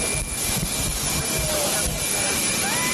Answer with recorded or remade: recorded